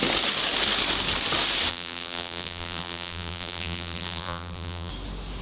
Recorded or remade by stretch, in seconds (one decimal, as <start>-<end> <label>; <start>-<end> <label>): 0.0-1.7 recorded; 1.7-4.9 remade; 4.9-5.4 recorded